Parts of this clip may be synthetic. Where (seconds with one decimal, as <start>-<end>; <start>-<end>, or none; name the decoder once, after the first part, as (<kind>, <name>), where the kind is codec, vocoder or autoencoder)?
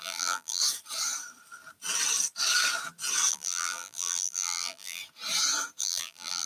0.0-0.6 (vocoder, BigVGAN v2); 3.3-5.0; 5.8-6.5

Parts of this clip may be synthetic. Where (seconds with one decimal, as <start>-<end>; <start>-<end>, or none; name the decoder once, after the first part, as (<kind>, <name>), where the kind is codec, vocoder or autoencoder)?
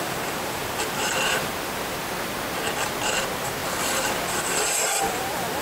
0.0-2.0 (vocoder, BigVGAN v2); 3.2-3.6; 4.3-5.6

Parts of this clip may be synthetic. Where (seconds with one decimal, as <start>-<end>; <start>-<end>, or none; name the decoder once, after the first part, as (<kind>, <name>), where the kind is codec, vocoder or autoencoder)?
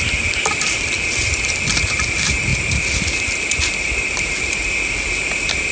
none